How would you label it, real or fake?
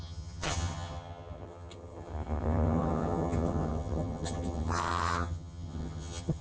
fake